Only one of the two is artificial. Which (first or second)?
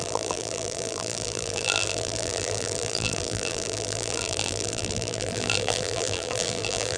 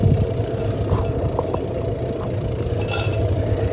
first